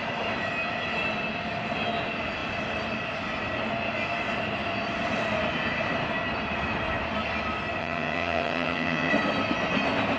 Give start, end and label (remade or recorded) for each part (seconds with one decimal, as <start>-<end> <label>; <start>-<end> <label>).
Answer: 0.0-7.8 recorded; 7.8-9.1 remade; 9.1-10.2 recorded